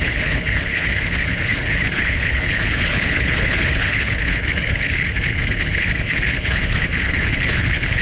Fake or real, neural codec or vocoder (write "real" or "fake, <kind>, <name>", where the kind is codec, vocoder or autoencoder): fake, codec, HILCodec